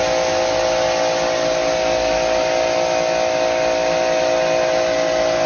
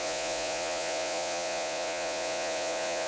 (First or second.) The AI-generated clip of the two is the second